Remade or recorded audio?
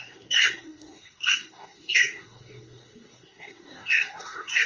remade